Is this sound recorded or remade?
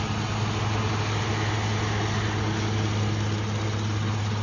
recorded